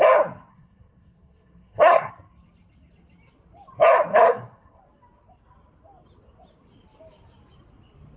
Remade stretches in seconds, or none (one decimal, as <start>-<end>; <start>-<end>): 0.5-2.1; 4.1-4.8